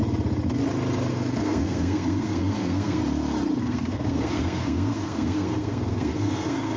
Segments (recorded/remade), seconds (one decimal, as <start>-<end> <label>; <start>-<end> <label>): 0.0-1.1 recorded; 1.1-3.0 remade; 3.0-3.6 recorded; 3.6-6.8 remade